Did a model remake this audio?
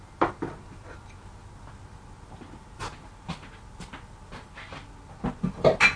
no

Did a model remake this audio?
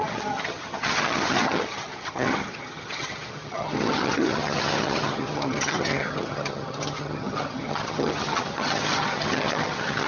yes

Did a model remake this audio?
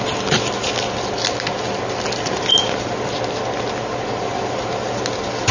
no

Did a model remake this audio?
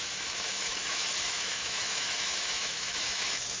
yes